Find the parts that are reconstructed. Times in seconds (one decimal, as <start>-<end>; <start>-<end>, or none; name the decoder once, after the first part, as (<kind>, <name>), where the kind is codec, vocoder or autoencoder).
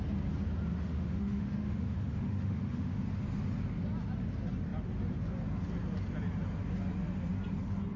0.7-3.0 (autoencoder, DAC-VAE)